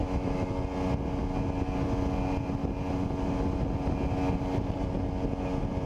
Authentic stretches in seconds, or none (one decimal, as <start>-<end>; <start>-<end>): 0.5-5.9